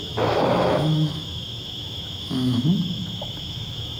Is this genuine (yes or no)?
no